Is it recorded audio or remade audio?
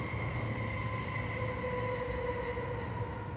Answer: recorded